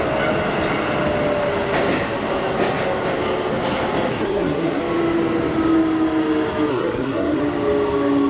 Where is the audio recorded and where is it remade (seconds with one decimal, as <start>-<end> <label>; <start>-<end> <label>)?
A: 0.0-4.1 recorded; 4.1-4.8 remade; 4.8-6.7 recorded; 6.7-7.4 remade; 7.4-8.3 recorded